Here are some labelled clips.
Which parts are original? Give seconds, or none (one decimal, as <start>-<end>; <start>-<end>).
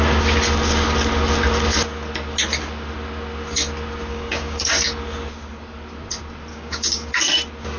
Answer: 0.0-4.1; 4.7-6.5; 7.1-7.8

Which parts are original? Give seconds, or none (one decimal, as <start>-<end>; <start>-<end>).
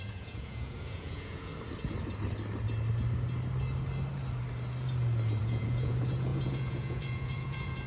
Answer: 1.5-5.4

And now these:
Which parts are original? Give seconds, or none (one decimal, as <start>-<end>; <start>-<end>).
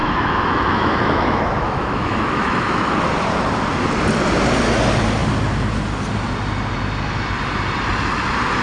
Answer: 2.9-8.6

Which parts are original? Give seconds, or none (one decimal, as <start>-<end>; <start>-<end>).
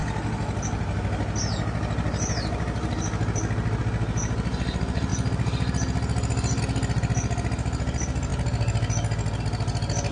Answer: 0.0-10.1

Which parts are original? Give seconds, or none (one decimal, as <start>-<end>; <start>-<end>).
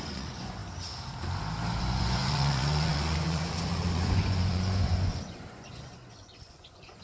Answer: 0.6-1.8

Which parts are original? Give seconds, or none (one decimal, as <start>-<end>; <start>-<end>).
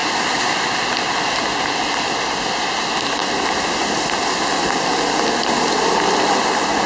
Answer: 0.0-6.9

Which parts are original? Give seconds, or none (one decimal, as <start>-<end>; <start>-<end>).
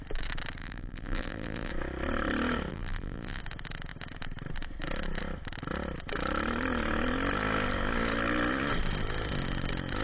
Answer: 0.0-0.6; 1.7-2.7; 3.4-10.0